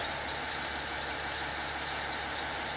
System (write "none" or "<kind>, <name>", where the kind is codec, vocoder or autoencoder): none